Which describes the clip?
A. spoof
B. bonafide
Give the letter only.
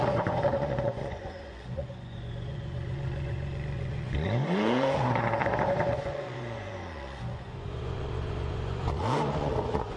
A